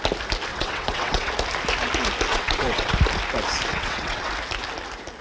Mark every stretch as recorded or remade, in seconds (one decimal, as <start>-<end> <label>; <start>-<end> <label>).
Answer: 0.0-0.5 recorded; 0.5-1.3 remade; 1.3-2.3 recorded; 2.3-3.0 remade; 3.0-3.7 recorded; 3.7-4.3 remade; 4.3-5.2 recorded